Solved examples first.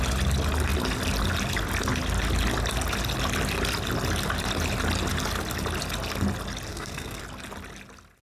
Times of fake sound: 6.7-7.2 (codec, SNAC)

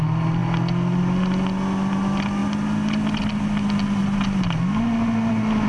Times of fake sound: none